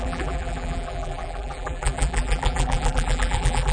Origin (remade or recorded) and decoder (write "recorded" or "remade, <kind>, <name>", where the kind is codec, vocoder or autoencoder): remade, vocoder, BigVGAN v2